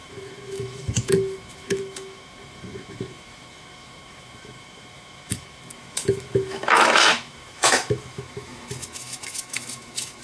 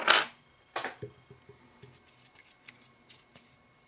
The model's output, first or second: first